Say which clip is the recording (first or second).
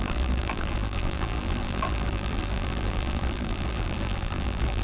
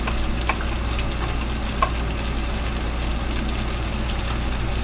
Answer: second